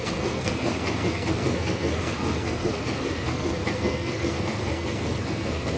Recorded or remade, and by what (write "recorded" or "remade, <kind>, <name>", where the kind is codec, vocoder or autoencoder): remade, codec, SNAC